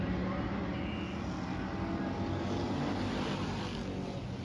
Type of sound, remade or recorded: recorded